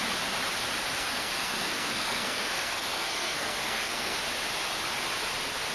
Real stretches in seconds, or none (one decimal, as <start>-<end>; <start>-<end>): 0.0-0.8; 4.2-5.7